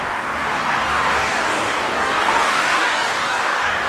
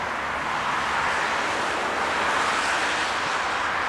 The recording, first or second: second